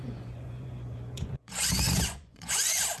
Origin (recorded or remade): remade